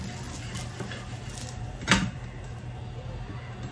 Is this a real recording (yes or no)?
yes